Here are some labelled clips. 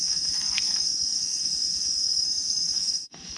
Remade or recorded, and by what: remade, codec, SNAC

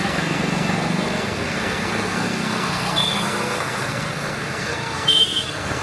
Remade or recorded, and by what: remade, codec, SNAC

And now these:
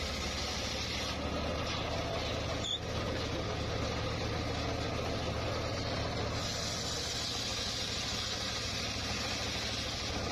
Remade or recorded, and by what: recorded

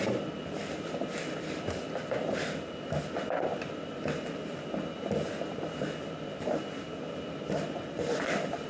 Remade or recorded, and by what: recorded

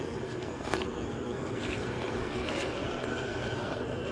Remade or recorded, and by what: remade, codec, SNAC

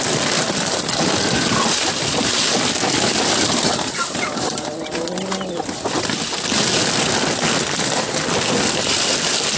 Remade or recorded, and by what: recorded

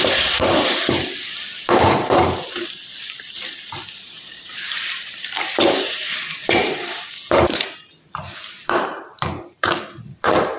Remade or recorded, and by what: remade, vocoder, BigVGAN v2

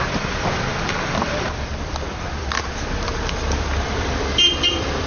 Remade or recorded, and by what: remade, vocoder, BigVGAN v2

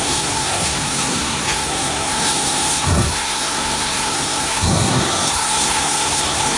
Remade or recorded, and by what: remade, codec, SNAC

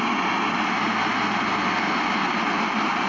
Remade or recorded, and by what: recorded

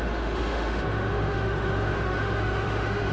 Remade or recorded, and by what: remade, autoencoder, DAC-VAE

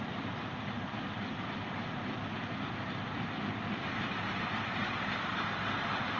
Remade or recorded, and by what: remade, vocoder, BigVGAN v2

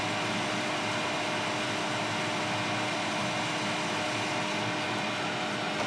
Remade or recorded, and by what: recorded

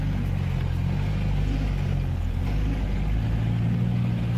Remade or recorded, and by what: recorded